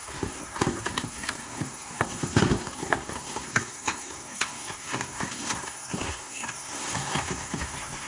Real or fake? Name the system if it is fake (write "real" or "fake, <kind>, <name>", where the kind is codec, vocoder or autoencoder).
fake, codec, SNAC